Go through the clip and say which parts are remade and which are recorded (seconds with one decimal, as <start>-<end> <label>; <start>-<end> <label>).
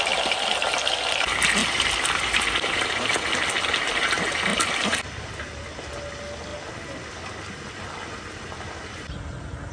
0.0-1.6 recorded; 1.6-3.3 remade; 3.3-9.7 recorded